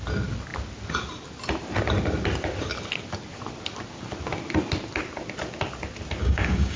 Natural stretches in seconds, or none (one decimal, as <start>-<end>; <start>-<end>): 0.0-6.2